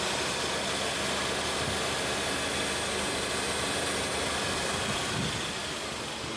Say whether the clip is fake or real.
real